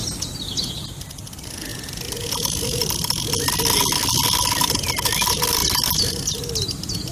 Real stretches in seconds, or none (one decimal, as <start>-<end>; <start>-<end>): 0.0-7.1